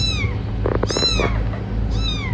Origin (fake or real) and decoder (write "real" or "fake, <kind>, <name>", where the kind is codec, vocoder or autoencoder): real